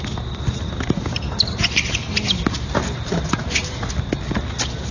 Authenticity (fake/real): real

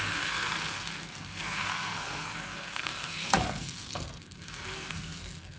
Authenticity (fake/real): fake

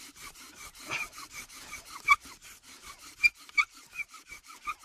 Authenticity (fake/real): fake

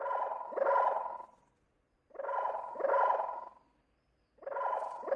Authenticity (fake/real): real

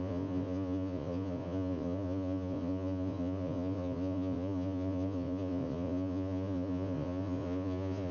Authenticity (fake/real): fake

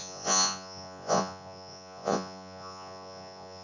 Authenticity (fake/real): fake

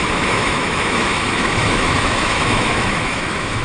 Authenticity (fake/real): fake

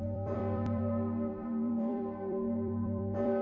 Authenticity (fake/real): fake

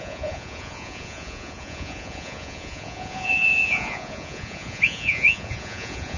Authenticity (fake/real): fake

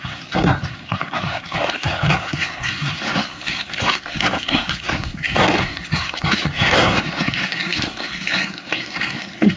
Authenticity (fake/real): fake